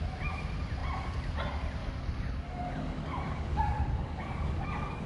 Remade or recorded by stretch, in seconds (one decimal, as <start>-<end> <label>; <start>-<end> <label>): 0.0-1.8 recorded; 1.8-5.1 remade